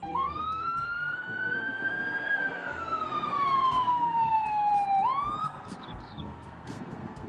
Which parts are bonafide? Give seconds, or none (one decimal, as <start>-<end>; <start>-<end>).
4.7-5.4